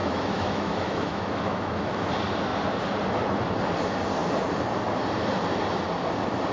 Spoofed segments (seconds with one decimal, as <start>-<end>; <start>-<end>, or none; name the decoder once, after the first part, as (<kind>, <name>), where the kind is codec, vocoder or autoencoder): 0.0-2.1 (autoencoder, DAC-VAE)